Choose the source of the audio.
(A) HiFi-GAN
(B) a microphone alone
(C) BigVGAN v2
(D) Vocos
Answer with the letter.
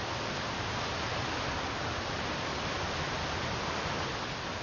B